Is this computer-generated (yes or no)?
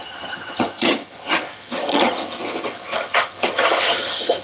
yes